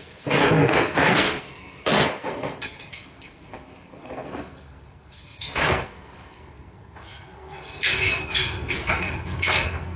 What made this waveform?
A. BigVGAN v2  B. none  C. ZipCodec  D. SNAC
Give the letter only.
D